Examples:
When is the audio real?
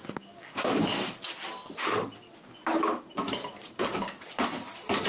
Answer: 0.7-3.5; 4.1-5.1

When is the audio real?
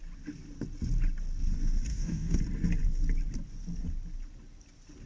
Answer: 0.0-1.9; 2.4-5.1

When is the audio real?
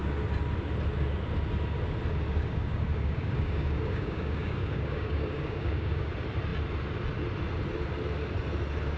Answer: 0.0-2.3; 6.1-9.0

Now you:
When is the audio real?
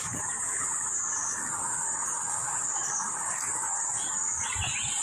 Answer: 0.0-1.4; 4.4-5.0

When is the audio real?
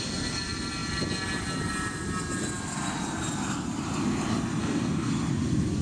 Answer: 0.0-4.6; 5.1-5.8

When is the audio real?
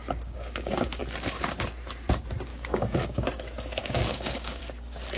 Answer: 1.0-2.5; 3.3-3.8; 4.6-5.2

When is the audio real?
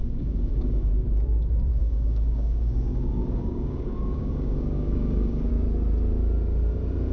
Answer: 0.9-1.8; 5.5-7.1